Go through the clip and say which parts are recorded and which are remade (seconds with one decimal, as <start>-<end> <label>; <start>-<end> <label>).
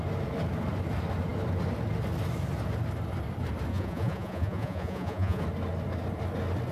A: 0.0-3.7 recorded; 3.7-5.4 remade; 5.4-6.7 recorded